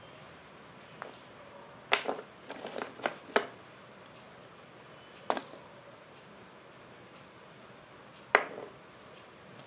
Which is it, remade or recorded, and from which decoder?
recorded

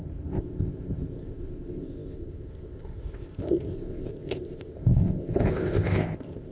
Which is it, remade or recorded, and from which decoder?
remade, codec, ZipCodec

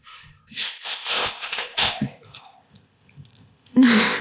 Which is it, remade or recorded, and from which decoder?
remade, codec, ZipCodec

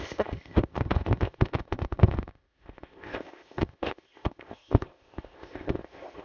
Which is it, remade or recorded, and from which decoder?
remade, codec, ZipCodec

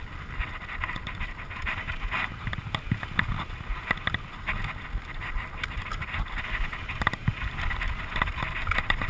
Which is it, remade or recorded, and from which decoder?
recorded